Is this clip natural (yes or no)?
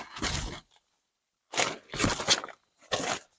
yes